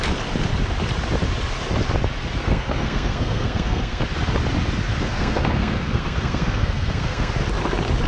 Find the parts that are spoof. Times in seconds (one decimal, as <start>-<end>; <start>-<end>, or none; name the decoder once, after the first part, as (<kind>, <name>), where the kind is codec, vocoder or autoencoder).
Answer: 2.4-4.0 (codec, SNAC); 5.0-7.3